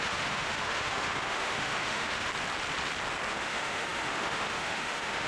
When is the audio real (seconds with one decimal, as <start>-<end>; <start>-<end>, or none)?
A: 2.3-3.3